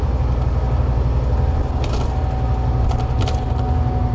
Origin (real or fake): real